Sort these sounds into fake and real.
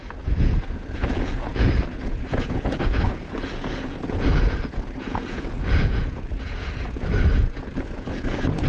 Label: fake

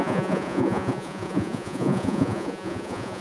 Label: fake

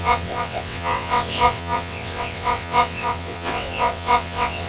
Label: fake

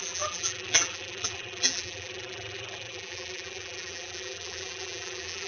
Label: fake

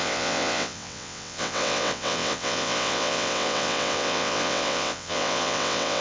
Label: fake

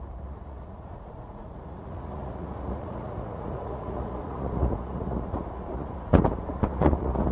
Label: fake